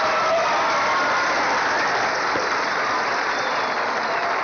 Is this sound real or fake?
real